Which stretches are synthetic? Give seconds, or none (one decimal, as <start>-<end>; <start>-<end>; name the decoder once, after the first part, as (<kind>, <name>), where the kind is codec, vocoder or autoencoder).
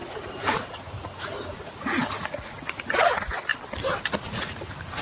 0.0-3.5 (vocoder, Vocos); 4.1-5.0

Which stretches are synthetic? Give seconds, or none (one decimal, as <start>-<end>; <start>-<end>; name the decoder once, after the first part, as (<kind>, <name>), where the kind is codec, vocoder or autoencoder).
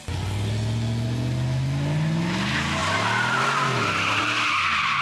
none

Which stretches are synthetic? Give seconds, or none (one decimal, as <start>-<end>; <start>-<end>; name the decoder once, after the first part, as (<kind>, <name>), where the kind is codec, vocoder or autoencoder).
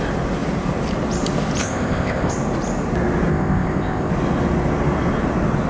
1.6-2.3 (codec, ZipCodec); 3.3-4.1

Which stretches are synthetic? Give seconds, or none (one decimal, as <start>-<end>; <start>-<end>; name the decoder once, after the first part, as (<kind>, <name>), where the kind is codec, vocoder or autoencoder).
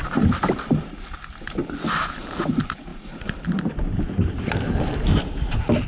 none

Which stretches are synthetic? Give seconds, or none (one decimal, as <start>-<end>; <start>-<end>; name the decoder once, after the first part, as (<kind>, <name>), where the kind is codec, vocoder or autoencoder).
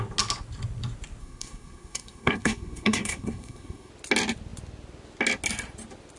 1.2-3.9 (codec, SNAC)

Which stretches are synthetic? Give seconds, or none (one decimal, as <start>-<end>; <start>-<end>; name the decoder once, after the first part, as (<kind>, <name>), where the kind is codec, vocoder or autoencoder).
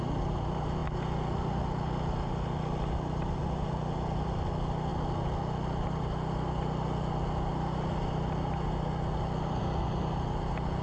none